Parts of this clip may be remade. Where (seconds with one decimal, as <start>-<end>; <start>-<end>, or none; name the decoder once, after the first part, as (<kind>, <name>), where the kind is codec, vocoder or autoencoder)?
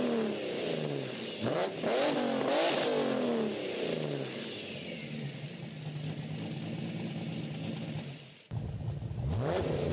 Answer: none